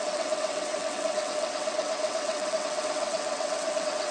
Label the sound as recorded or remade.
remade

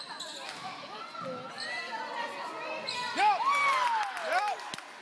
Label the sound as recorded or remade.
recorded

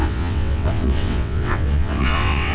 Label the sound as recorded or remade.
remade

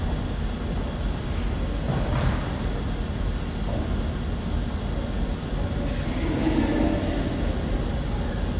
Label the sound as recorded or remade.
recorded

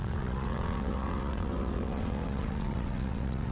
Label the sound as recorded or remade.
remade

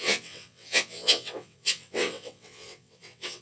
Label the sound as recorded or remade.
remade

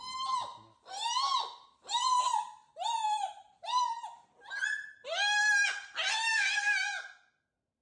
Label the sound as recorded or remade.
recorded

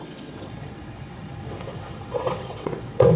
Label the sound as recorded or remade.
remade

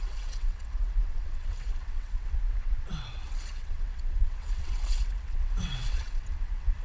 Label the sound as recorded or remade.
remade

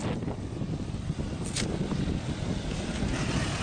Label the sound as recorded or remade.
recorded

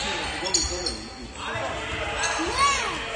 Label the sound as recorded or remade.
recorded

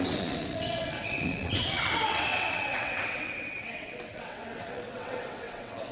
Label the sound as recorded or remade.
remade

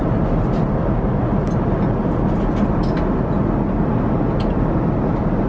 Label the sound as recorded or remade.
recorded